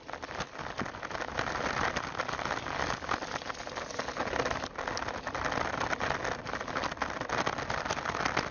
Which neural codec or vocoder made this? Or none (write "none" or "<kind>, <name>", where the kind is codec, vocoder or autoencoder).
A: none